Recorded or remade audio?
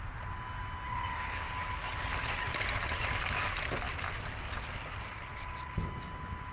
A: recorded